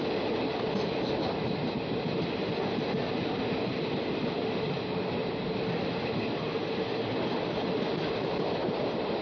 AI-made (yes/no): no